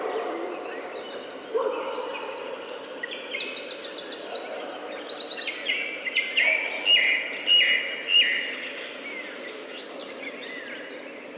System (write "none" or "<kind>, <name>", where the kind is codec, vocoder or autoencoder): none